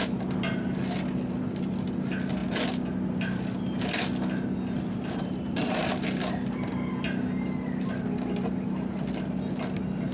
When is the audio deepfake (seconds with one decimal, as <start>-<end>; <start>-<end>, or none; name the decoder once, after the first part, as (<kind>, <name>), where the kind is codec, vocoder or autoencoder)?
none